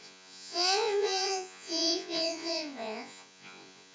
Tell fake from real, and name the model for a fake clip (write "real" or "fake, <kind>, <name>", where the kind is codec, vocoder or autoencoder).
fake, vocoder, Vocos